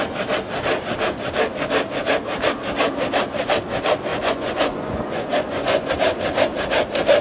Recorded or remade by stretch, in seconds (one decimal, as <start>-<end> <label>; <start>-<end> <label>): 0.0-4.1 recorded; 4.1-5.9 remade; 5.9-7.2 recorded